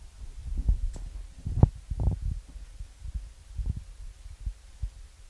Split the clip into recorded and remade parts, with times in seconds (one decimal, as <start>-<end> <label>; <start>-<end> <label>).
0.0-5.3 recorded